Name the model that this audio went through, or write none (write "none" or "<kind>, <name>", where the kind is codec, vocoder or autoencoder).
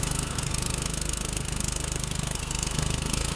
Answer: codec, SNAC